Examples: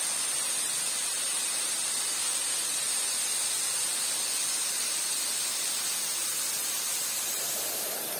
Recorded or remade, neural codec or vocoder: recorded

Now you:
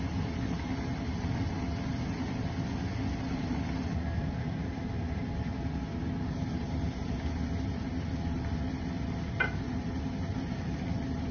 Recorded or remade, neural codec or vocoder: recorded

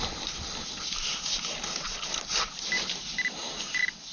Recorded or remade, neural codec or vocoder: recorded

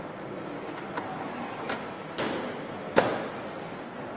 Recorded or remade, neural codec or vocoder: recorded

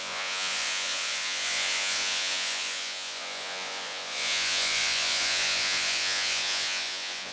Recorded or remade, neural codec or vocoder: remade, vocoder, Vocos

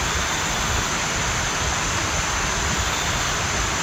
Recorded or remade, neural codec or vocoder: recorded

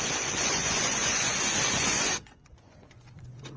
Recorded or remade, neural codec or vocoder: remade, vocoder, Vocos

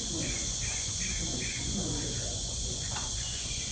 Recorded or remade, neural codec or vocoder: remade, vocoder, Vocos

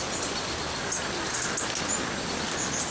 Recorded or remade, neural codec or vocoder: recorded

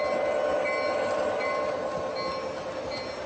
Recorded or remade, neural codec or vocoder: recorded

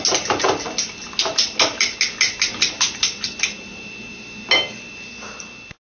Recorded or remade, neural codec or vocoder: recorded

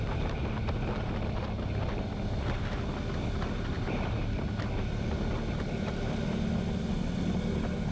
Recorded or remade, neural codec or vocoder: recorded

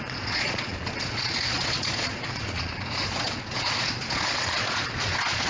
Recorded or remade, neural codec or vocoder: remade, vocoder, Vocos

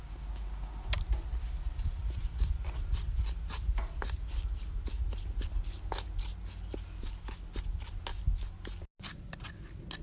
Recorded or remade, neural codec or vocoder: recorded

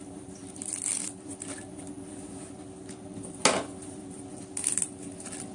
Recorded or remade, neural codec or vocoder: recorded